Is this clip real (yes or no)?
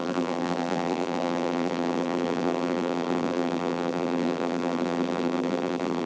no